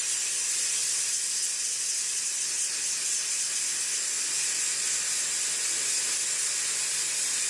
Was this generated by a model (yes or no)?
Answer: no